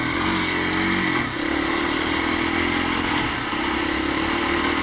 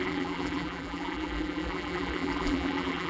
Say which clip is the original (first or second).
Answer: first